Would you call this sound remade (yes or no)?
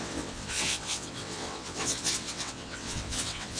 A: yes